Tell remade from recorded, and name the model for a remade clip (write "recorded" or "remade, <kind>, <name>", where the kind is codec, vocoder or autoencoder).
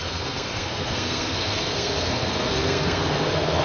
remade, codec, SNAC